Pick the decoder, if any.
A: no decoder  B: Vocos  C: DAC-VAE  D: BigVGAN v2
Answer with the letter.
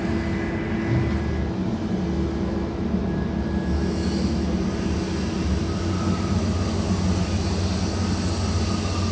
A